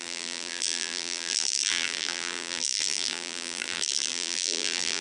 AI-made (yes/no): yes